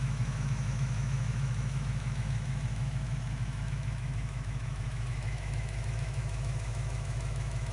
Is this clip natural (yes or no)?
no